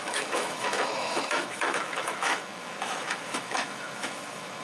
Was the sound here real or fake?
fake